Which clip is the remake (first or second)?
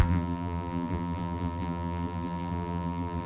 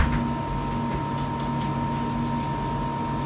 first